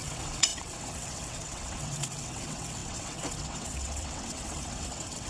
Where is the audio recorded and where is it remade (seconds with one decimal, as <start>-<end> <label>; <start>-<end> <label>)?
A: 0.0-5.3 remade